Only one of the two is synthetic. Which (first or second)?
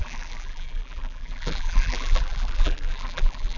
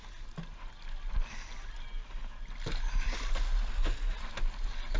first